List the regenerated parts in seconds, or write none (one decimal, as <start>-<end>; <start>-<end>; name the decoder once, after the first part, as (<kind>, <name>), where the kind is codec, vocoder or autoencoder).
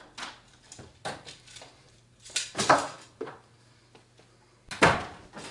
0.5-3.8 (vocoder, BigVGAN v2)